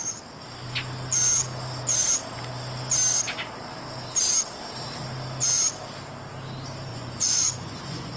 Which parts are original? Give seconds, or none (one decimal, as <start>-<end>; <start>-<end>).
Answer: 0.0-6.9